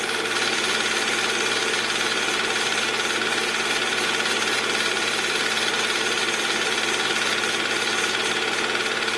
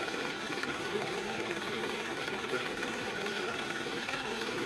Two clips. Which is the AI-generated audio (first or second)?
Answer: second